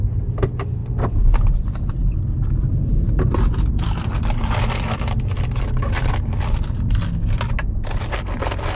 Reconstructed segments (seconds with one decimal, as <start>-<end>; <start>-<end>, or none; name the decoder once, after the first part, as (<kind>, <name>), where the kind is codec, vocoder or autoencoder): none